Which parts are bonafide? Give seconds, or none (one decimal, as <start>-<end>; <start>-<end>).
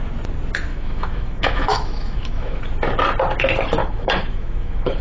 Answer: 0.0-0.7; 2.6-3.8